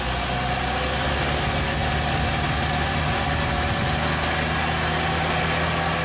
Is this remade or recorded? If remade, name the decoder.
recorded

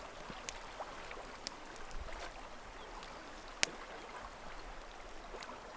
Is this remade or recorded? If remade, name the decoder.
recorded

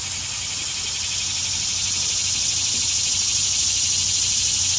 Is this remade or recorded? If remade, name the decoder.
recorded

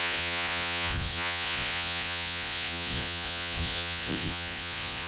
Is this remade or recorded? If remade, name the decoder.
remade, vocoder, Vocos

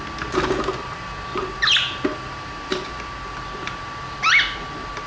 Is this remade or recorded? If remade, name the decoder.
recorded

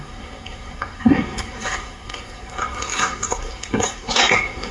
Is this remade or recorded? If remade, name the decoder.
remade, codec, SNAC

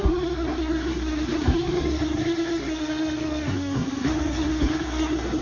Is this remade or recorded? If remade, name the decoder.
remade, codec, SNAC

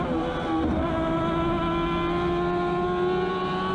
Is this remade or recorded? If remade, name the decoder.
recorded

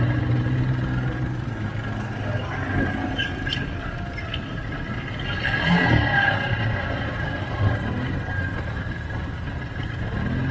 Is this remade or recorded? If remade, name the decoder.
recorded